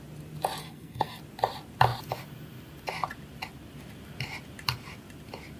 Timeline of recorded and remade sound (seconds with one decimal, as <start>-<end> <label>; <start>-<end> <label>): 0.0-0.6 recorded; 0.6-1.2 remade; 1.2-5.6 recorded